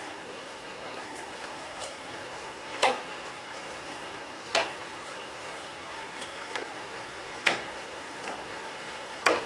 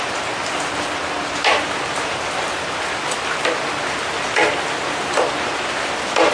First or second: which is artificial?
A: first